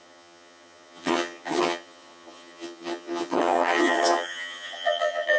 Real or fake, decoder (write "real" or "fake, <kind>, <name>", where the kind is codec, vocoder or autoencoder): fake, vocoder, HiFi-GAN